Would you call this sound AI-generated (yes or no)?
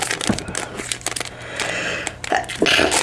no